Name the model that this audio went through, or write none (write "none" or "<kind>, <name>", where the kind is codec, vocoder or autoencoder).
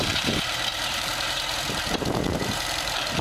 vocoder, BigVGAN v2